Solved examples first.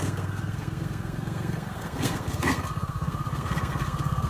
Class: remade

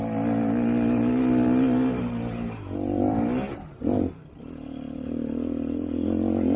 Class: recorded